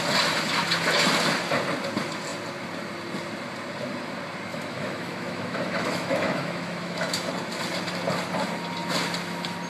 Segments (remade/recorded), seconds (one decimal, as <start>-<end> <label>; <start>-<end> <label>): 0.0-4.5 recorded; 4.5-7.3 remade; 7.3-9.7 recorded